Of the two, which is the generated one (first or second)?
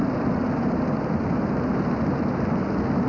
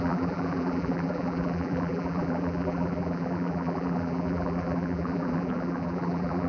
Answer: second